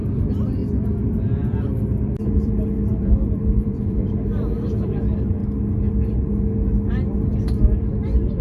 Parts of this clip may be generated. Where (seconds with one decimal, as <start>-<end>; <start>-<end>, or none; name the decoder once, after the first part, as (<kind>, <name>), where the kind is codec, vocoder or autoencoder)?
0.0-0.6 (vocoder, BigVGAN v2); 2.2-5.4; 6.9-8.4